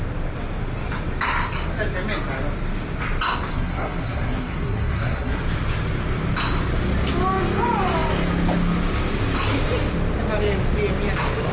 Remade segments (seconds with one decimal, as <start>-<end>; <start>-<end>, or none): 3.5-5.4